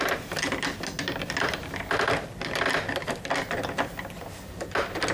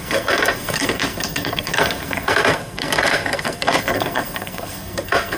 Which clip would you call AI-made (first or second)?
second